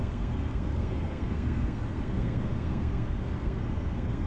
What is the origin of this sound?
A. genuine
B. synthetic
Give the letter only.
B